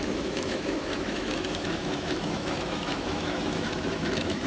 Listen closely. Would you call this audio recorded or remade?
remade